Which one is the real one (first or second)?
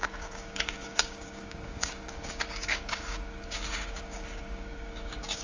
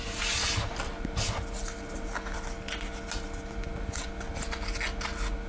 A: second